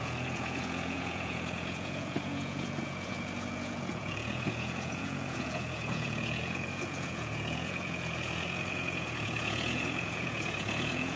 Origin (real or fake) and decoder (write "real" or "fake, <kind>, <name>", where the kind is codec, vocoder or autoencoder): fake, vocoder, Vocos